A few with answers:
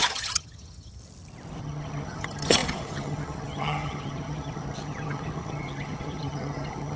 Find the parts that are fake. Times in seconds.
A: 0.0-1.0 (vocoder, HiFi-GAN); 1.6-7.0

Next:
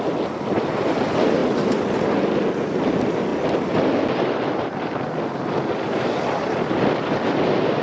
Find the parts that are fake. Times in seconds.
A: none